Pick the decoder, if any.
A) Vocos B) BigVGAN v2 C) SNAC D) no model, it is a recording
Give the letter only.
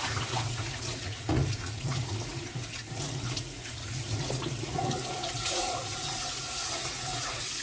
A